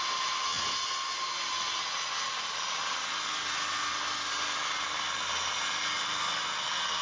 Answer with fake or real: real